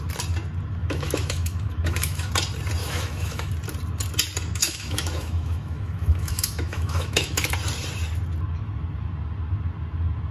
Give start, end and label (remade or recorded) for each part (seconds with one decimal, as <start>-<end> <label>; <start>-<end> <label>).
0.0-0.8 recorded; 0.8-2.3 remade; 2.3-2.8 recorded; 2.8-3.5 remade; 3.5-4.6 recorded; 4.6-7.5 remade; 7.5-10.3 recorded